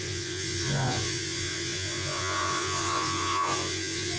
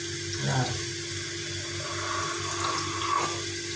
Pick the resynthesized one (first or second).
first